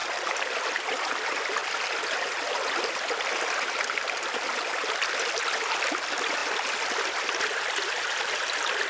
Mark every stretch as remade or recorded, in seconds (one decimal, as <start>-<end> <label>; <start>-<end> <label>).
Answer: 0.0-0.9 remade; 0.9-6.4 recorded; 6.4-7.3 remade; 7.3-8.9 recorded